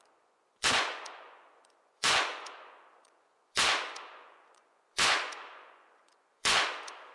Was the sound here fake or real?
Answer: fake